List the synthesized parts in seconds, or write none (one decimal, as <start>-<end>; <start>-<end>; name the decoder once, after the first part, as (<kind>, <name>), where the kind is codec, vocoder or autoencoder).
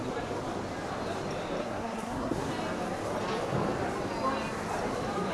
1.6-2.5 (codec, SNAC)